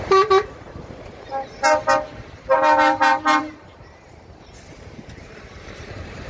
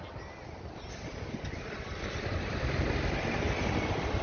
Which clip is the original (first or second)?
second